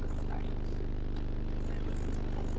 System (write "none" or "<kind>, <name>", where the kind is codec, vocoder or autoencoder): none